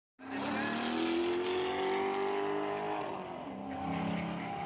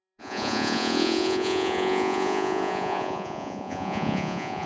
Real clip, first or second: first